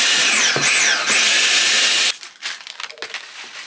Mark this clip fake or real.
real